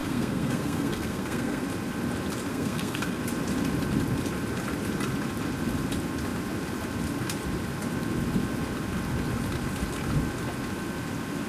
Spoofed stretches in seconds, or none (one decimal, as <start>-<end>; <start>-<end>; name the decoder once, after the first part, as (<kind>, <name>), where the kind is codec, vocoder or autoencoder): 0.0-1.6 (codec, SNAC); 2.5-3.2